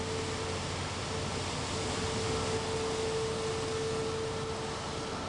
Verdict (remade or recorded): recorded